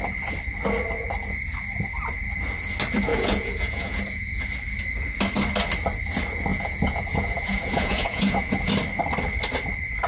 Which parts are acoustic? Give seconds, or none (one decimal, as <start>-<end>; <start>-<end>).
0.0-3.1; 4.4-6.5; 8.7-10.1